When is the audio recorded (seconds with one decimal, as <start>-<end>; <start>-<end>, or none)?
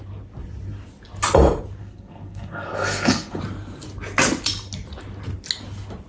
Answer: 0.0-1.8; 3.4-6.1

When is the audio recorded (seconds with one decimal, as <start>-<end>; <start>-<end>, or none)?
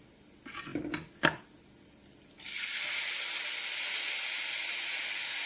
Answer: 0.0-5.5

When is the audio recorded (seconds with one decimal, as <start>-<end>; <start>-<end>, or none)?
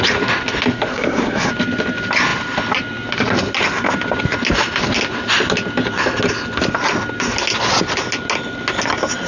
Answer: 0.0-0.9; 1.5-9.3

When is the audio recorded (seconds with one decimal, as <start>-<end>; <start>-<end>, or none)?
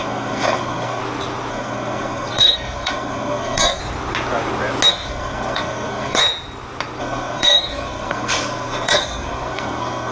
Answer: 1.0-1.5; 3.8-4.9; 6.2-7.0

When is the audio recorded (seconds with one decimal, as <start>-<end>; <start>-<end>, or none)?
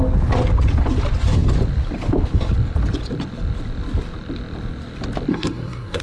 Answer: 0.0-5.3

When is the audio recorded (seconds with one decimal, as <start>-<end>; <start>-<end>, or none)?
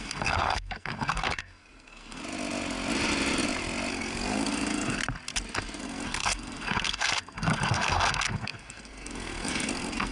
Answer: 2.2-3.9; 5.0-5.8